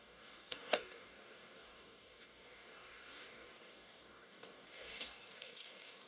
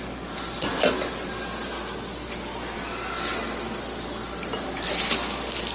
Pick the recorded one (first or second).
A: second